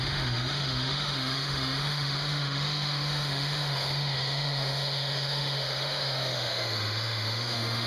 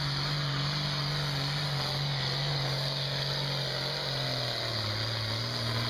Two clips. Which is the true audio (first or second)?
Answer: second